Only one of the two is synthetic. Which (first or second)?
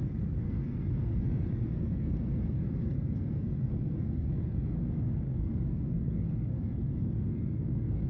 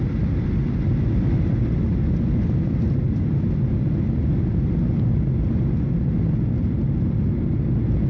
first